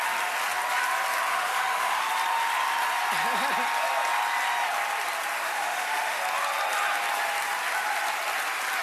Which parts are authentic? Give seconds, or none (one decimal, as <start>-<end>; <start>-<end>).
0.0-1.3; 2.1-5.3; 6.2-8.8